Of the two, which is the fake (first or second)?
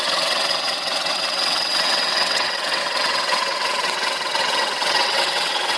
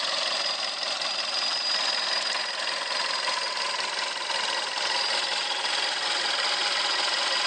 first